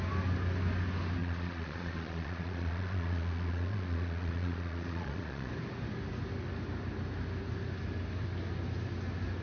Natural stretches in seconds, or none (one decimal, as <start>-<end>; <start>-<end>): 0.0-1.2; 5.5-9.4